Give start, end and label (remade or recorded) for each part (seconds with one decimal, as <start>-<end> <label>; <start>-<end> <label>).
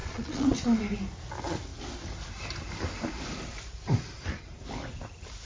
0.0-0.8 remade; 0.8-5.5 recorded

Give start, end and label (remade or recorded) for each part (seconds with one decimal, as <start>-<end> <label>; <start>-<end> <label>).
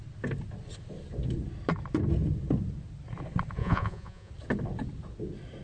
0.0-3.6 recorded; 3.6-4.3 remade; 4.3-5.6 recorded